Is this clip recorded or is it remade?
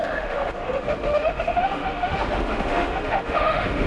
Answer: remade